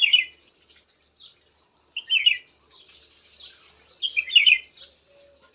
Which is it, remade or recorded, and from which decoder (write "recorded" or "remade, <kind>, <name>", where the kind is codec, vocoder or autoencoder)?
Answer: recorded